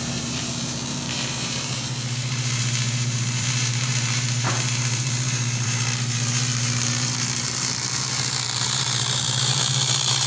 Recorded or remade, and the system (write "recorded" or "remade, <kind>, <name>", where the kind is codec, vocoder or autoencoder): remade, vocoder, BigVGAN v2